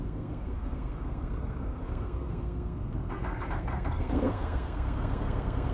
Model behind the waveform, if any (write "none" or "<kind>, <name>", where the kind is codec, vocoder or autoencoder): codec, SNAC